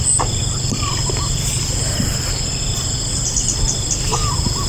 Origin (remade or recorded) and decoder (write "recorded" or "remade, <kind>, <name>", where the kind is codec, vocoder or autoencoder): recorded